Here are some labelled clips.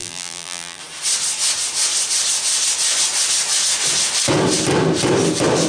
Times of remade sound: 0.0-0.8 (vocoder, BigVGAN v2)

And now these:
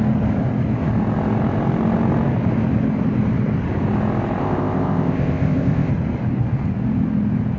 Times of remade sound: 4.4-5.9 (codec, ZipCodec)

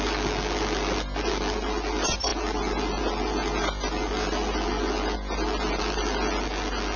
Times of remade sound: none

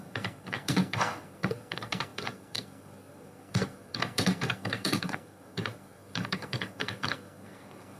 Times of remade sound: 0.0-8.0 (codec, SNAC)

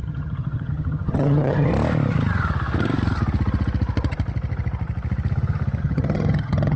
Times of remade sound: 0.0-1.7 (vocoder, HiFi-GAN); 5.8-6.8

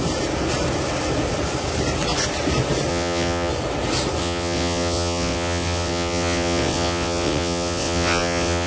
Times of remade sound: 2.9-3.5 (vocoder, WaveNeXt); 4.2-8.7

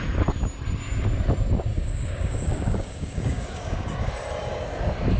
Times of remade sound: 1.7-4.1 (codec, DAC)

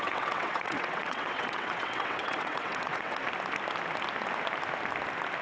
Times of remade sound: 0.0-3.2 (vocoder, WaveNeXt)